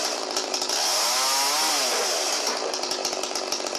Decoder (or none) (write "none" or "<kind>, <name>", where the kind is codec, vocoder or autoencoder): none